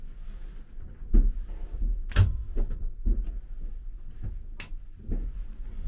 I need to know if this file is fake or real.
real